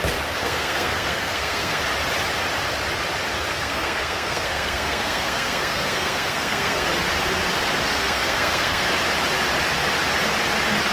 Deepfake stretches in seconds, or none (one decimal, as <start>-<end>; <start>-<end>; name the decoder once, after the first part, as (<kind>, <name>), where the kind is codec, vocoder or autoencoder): 0.4-1.8 (codec, SNAC); 3.5-6.9; 7.8-8.9